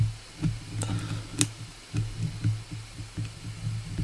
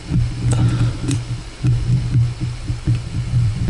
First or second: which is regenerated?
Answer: second